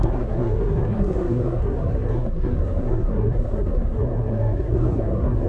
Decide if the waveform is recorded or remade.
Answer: remade